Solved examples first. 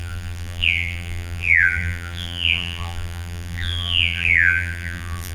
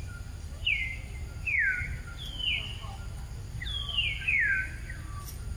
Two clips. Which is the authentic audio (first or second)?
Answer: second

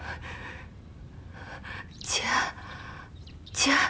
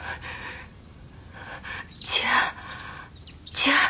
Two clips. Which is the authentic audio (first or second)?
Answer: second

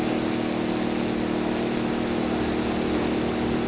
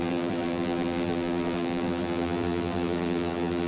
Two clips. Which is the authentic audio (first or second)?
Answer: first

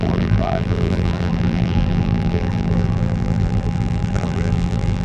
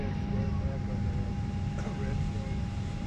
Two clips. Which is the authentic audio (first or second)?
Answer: second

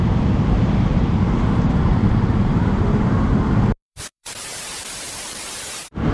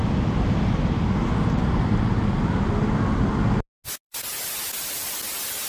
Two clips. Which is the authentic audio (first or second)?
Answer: second